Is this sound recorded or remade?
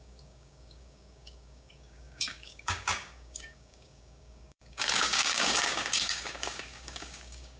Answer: remade